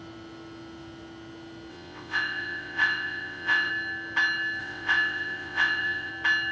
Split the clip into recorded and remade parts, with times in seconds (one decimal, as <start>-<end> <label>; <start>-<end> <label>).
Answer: 0.0-1.7 recorded; 1.7-3.7 remade; 3.7-4.6 recorded; 4.6-6.1 remade; 6.1-6.5 recorded